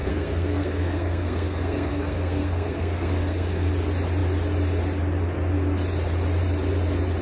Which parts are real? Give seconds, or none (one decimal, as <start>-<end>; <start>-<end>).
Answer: 3.7-7.2